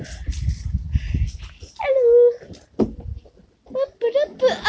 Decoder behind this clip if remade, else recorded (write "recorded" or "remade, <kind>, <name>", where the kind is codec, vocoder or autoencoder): recorded